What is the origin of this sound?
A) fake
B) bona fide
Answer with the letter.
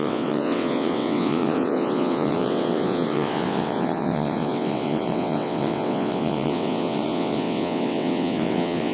A